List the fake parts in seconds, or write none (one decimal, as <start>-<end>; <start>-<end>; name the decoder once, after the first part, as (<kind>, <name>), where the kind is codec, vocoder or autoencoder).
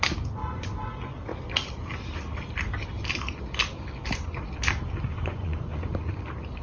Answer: 0.4-0.9 (vocoder, Vocos); 5.1-6.1